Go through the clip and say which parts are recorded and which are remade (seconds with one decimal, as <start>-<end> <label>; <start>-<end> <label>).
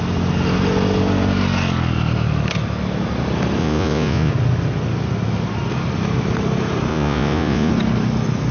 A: 0.0-3.6 recorded; 3.6-4.3 remade; 4.3-6.9 recorded; 6.9-7.7 remade; 7.7-8.5 recorded